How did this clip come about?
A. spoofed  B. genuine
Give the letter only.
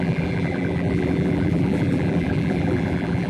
A